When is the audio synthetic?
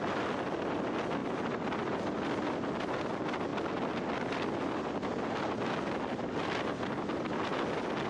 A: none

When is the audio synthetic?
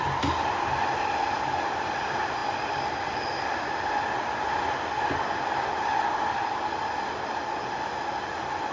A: none